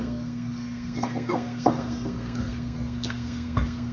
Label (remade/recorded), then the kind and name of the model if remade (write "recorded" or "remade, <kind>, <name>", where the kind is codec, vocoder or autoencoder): remade, codec, SNAC